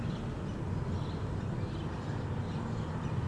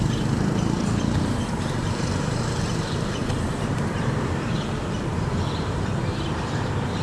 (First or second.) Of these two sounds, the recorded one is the first